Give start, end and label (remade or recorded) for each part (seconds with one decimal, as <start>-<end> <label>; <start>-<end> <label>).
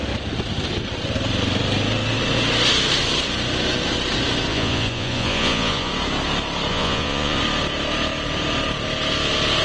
0.0-4.5 recorded; 4.5-5.9 remade; 5.9-6.7 recorded; 6.7-7.4 remade; 7.4-9.6 recorded